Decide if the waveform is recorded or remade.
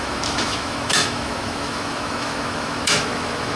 remade